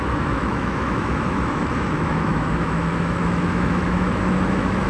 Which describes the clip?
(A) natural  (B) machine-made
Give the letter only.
B